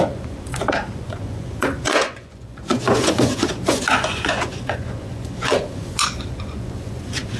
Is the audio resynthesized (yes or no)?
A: yes